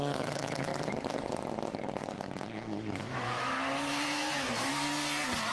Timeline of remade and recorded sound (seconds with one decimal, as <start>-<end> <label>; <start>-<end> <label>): 0.0-0.7 remade; 0.7-2.4 recorded; 2.4-4.7 remade; 4.7-5.5 recorded